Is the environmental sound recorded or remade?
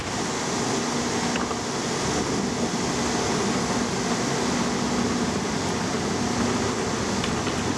recorded